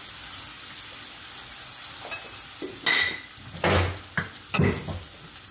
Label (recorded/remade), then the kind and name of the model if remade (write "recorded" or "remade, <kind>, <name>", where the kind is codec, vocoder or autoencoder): recorded